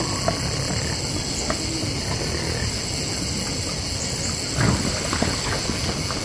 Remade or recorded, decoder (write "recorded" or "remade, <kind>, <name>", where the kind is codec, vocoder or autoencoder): recorded